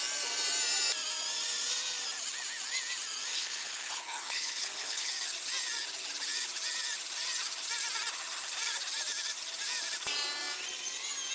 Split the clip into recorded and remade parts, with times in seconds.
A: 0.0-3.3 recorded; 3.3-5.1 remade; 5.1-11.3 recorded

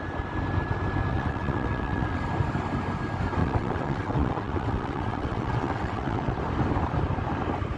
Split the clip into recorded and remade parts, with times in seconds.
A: 0.0-1.1 recorded; 1.1-2.2 remade; 2.2-3.4 recorded; 3.4-6.4 remade; 6.4-7.8 recorded

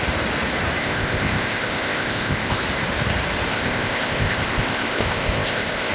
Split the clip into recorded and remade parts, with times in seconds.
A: 0.0-0.8 recorded; 0.8-2.6 remade; 2.6-3.5 recorded; 3.5-5.9 remade